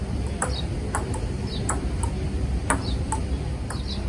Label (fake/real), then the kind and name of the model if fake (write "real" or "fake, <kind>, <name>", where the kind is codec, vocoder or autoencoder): real